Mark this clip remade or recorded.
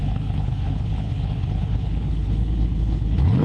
remade